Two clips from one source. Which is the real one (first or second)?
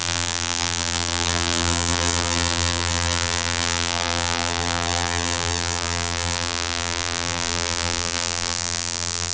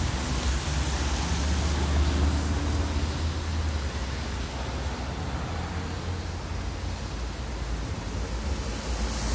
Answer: second